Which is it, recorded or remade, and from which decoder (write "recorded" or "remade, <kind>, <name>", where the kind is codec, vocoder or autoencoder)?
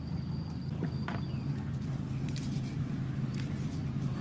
recorded